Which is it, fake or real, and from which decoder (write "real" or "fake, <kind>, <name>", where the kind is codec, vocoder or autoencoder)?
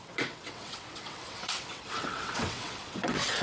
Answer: fake, vocoder, WaveNeXt